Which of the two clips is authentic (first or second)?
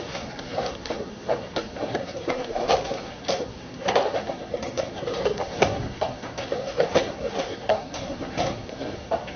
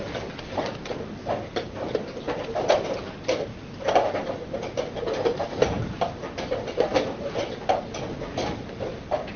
second